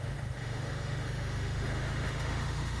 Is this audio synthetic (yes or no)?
yes